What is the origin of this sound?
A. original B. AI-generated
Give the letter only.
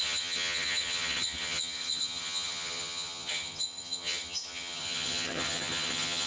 B